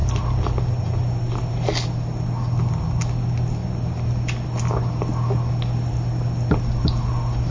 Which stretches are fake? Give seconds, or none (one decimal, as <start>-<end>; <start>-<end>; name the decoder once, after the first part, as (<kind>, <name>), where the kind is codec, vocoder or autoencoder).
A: none